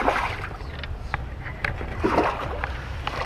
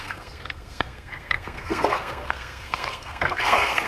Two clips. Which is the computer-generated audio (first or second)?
second